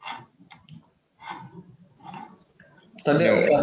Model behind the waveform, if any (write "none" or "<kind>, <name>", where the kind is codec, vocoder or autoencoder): none